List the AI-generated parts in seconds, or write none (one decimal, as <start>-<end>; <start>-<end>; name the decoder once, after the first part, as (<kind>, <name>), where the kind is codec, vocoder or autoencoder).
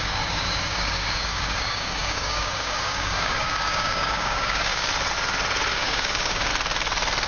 0.0-4.9 (codec, DAC); 5.7-6.5